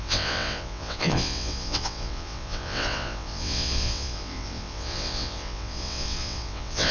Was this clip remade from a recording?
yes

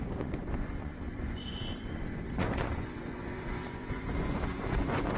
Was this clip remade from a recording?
yes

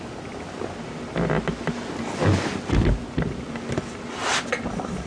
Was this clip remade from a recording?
no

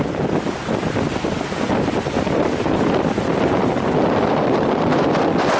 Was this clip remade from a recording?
yes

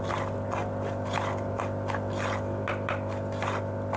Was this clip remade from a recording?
yes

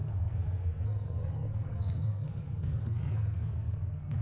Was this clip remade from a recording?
yes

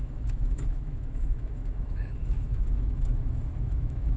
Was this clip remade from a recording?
yes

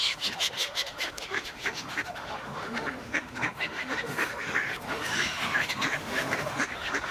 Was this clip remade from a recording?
yes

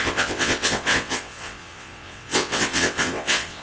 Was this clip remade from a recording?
yes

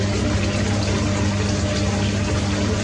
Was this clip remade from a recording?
no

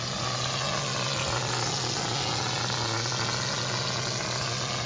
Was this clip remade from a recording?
no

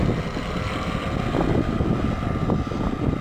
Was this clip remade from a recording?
no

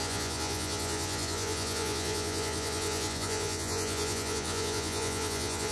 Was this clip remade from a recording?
yes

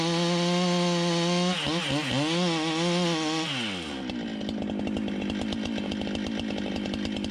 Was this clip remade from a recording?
no